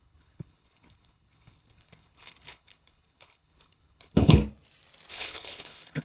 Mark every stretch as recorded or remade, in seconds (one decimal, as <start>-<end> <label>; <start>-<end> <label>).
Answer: 0.0-4.4 remade; 4.4-5.1 recorded; 5.1-6.0 remade